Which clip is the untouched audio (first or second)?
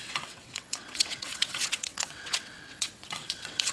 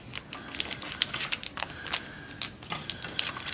second